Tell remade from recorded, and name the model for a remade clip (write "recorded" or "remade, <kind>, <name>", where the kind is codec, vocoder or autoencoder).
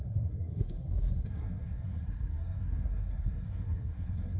remade, codec, SNAC